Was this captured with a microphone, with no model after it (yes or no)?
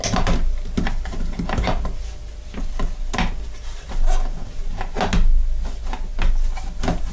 yes